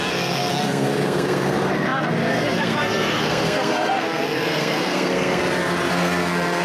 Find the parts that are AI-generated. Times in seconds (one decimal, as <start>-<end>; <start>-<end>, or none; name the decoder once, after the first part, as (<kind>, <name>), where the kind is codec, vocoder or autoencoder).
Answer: 0.0-5.4 (codec, SNAC); 5.9-6.6